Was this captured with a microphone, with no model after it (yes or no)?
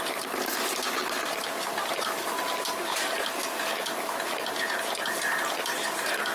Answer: yes